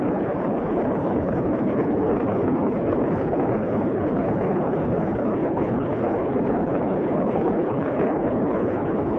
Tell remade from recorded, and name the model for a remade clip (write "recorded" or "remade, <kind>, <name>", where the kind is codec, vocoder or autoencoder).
remade, codec, HILCodec